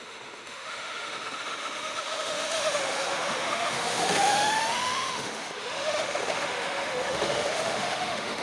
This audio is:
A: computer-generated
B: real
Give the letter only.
A